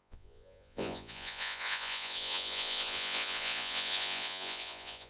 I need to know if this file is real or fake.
fake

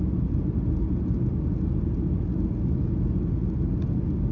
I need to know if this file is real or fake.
real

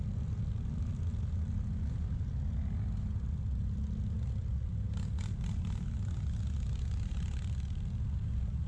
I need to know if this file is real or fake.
real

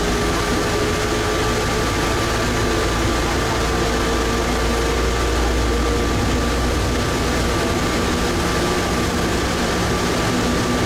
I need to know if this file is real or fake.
real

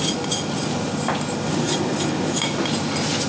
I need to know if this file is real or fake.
real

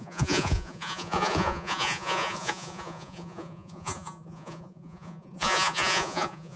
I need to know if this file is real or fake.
fake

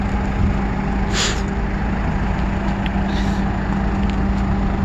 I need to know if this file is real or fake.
real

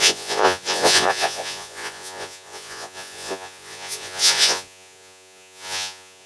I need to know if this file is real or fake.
fake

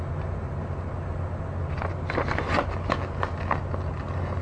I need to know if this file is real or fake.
real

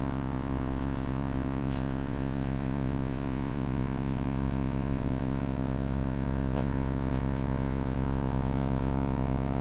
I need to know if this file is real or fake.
fake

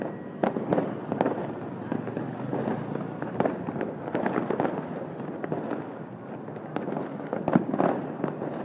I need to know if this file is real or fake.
real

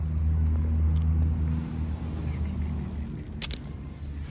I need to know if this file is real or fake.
real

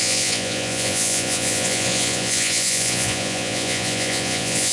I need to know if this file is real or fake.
fake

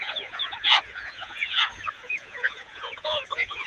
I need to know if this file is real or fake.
fake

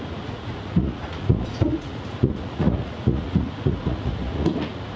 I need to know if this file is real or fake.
fake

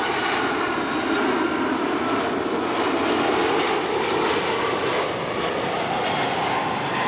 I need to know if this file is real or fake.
real